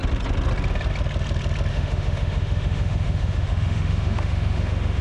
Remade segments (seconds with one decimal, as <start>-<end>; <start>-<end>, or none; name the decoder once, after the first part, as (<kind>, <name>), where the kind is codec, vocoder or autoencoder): 1.7-5.0 (autoencoder, DAC-VAE)

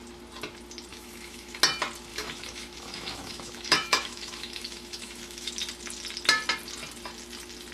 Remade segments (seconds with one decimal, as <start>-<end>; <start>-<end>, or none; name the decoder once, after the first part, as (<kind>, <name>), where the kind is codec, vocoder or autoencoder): 0.9-1.6 (autoencoder, DAC-VAE); 2.1-5.5

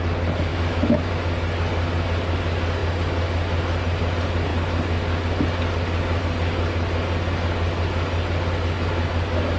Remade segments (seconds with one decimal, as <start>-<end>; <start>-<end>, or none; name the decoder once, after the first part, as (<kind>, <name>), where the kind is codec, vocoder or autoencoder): 0.5-1.1 (autoencoder, DAC-VAE)

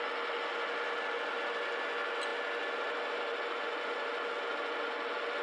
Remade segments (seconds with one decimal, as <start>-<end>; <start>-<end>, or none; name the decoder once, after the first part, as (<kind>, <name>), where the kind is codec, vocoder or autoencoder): none